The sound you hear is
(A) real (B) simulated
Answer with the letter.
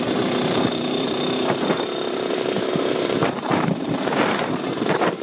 B